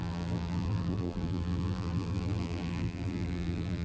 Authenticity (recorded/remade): remade